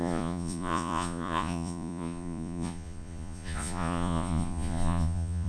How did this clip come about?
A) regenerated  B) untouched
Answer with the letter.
A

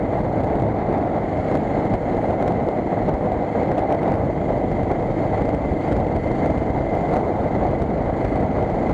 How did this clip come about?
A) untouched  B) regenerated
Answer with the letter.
A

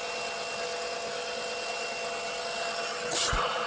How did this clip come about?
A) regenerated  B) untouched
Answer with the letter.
B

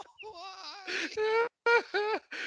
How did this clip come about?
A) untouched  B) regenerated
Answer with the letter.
A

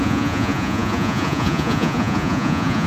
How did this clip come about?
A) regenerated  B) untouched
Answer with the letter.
A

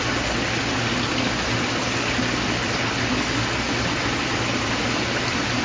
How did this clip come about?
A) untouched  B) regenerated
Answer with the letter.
A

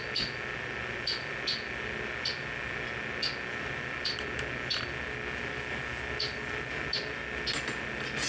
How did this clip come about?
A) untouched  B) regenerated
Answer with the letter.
A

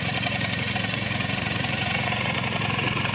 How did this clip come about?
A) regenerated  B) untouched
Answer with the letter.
A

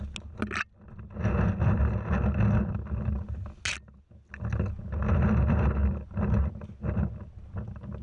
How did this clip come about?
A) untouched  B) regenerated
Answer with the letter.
A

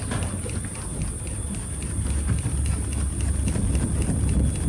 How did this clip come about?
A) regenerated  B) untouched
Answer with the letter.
B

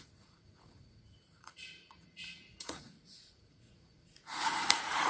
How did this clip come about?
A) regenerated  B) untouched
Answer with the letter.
A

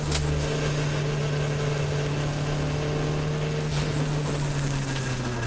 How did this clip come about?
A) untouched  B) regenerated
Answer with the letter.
A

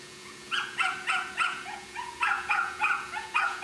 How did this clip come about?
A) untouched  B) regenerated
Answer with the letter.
B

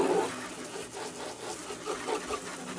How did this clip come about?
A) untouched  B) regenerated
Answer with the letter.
A